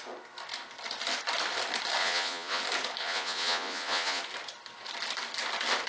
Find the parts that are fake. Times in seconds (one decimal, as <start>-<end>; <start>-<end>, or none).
2.0-2.6; 3.0-4.2